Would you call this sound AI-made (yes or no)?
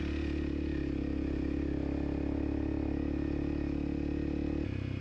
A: no